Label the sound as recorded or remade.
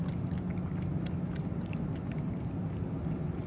recorded